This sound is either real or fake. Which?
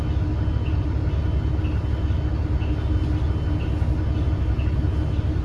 real